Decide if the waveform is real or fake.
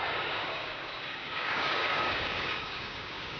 fake